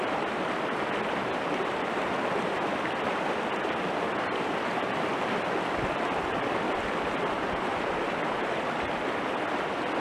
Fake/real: real